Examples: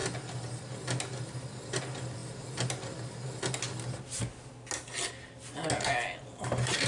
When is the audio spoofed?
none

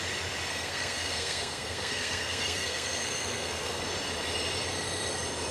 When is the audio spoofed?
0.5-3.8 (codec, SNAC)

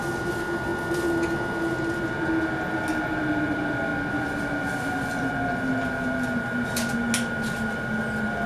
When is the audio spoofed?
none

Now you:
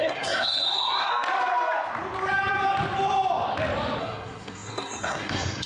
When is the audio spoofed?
0.0-1.1 (codec, SNAC); 4.0-5.7

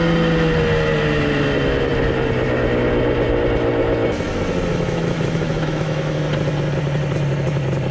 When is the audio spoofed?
4.7-6.2 (autoencoder, DAC-VAE)

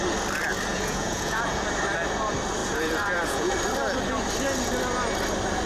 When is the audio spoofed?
0.7-1.6 (vocoder, Vocos); 2.6-3.5

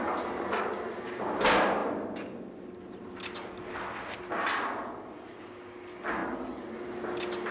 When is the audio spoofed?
none